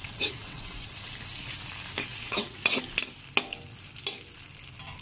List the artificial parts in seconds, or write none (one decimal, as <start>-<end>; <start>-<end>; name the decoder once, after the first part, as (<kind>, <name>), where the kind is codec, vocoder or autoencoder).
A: 0.0-1.1 (vocoder, WaveNeXt); 2.1-2.8